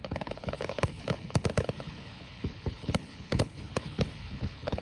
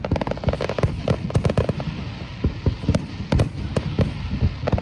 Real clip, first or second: second